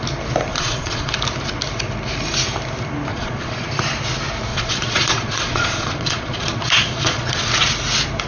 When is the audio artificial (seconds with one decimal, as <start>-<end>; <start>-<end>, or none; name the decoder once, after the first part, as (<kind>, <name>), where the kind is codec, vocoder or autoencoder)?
0.5-1.1 (vocoder, Vocos); 3.1-3.7; 4.5-7.5